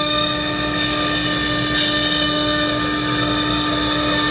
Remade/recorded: recorded